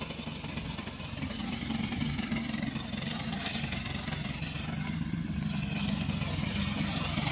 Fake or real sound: fake